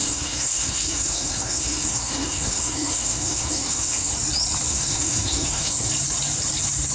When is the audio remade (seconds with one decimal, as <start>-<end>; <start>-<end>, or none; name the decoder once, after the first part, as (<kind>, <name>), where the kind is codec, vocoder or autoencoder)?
0.0-4.1 (codec, SNAC); 4.7-5.9